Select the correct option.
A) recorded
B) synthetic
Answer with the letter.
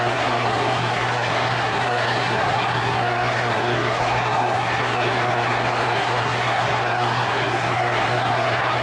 B